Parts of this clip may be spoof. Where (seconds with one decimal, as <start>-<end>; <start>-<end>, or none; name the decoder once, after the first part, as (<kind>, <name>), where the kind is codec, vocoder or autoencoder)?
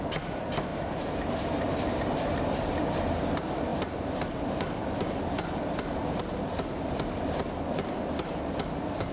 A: 0.7-2.3 (vocoder, BigVGAN v2); 3.7-5.3